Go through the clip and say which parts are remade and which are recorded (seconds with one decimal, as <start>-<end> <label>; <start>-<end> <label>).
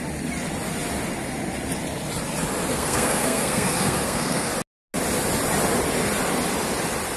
0.0-2.7 recorded; 2.7-4.5 remade; 4.5-7.2 recorded